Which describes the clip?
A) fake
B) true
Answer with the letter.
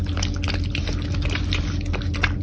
B